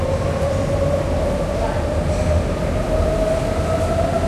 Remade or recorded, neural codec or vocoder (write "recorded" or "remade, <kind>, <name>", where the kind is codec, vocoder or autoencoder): recorded